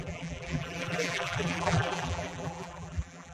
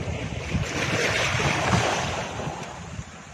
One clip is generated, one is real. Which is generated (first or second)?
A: first